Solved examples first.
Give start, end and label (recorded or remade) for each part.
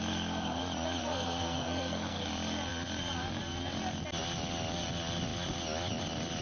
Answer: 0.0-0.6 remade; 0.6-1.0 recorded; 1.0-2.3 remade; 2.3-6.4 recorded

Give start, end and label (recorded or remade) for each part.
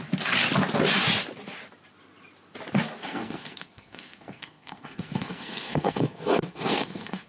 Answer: 0.0-3.0 recorded; 3.0-7.3 remade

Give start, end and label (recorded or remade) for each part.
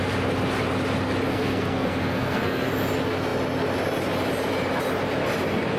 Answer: 0.0-1.3 recorded; 1.3-2.7 remade; 2.7-5.8 recorded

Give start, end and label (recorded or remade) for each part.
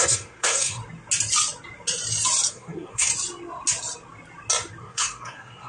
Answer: 0.0-0.8 remade; 0.8-2.5 recorded; 2.5-3.1 remade; 3.1-4.8 recorded; 4.8-5.7 remade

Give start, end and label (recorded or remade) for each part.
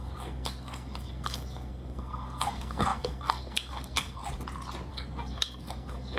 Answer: 0.0-4.2 remade; 4.2-4.9 recorded; 4.9-6.2 remade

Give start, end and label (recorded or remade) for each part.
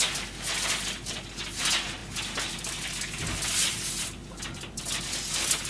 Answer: 0.0-5.7 recorded